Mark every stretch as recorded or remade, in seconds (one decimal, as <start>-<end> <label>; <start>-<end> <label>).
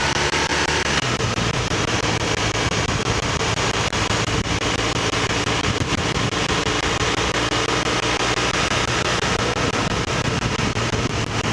0.0-0.5 recorded; 0.5-1.9 remade; 1.9-11.5 recorded